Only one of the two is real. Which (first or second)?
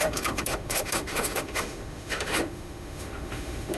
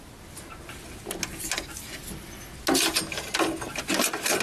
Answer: second